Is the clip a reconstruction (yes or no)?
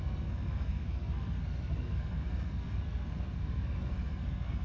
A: yes